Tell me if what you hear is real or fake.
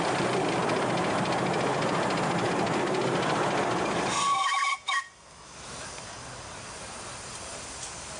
real